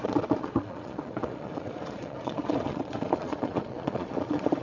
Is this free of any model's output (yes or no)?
no